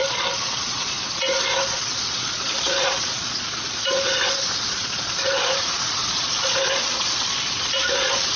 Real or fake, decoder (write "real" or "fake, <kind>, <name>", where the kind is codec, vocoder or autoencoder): fake, vocoder, Vocos